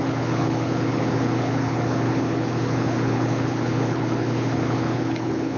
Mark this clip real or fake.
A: fake